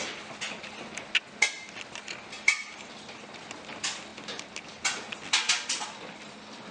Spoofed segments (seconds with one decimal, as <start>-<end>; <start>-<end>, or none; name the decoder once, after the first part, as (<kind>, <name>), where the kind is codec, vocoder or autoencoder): none